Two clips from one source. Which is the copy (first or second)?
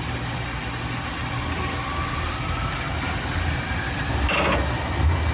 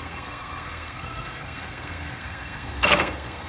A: second